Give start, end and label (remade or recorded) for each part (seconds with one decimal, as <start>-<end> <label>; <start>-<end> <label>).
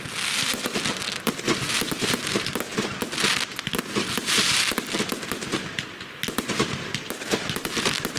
0.0-8.2 recorded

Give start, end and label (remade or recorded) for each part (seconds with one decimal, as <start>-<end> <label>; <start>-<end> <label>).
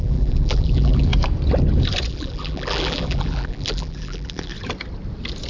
0.0-1.1 remade; 1.1-2.1 recorded; 2.1-4.5 remade; 4.5-5.5 recorded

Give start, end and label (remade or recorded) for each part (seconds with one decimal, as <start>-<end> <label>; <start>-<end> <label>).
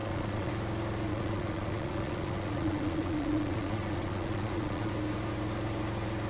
0.0-0.5 remade; 0.5-1.1 recorded; 1.1-4.9 remade; 4.9-6.3 recorded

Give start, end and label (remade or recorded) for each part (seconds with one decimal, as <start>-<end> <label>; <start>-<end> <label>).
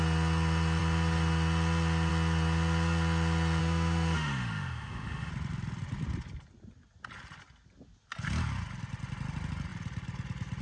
0.0-3.6 recorded; 3.6-5.3 remade; 5.3-10.6 recorded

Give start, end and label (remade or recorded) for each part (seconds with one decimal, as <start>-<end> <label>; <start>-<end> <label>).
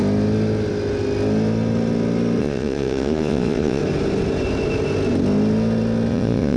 0.0-2.4 recorded; 2.4-3.8 remade; 3.8-6.1 recorded; 6.1-6.6 remade